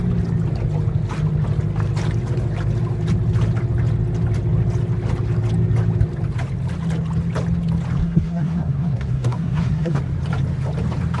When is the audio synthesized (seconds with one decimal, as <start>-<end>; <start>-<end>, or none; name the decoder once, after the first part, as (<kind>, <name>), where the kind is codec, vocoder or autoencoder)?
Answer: 8.0-10.0 (codec, SNAC)